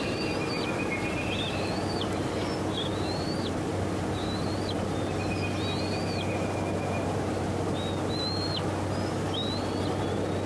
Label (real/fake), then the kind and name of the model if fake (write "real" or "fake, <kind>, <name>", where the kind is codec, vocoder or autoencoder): real